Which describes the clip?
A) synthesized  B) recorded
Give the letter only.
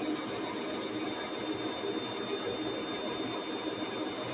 B